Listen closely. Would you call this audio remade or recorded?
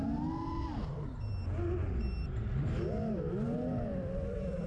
recorded